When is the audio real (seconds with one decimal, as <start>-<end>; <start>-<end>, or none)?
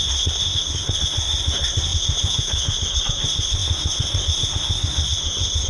none